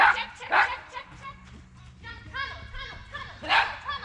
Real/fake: real